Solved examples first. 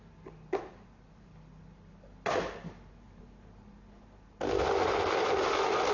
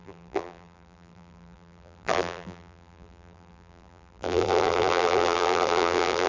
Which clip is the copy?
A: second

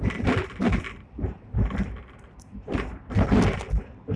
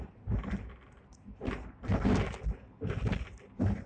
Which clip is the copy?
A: first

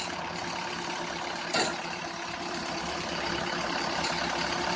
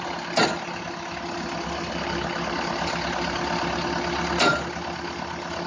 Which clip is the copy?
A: first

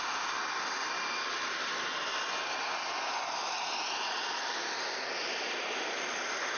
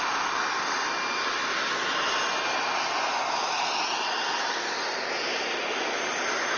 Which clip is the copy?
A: first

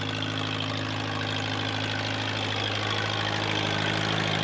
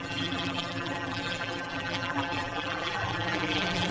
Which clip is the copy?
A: second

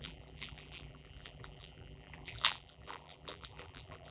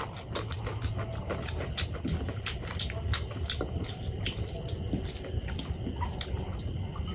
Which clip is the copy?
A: first